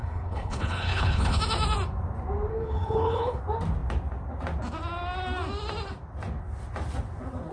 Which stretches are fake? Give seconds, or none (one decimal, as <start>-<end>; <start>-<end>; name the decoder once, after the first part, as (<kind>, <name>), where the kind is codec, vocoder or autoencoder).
0.0-1.4 (codec, HILCodec); 2.5-3.4